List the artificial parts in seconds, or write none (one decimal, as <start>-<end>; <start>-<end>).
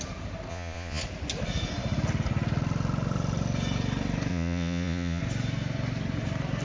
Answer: 0.5-1.0; 4.3-5.2